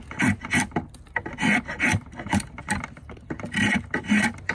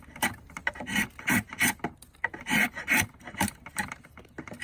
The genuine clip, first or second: first